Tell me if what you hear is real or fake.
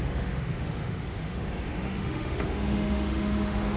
fake